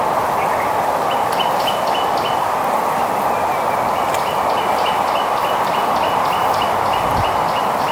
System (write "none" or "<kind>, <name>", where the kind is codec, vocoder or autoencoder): none